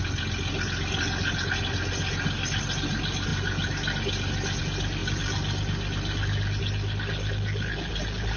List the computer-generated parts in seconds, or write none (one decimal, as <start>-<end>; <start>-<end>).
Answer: none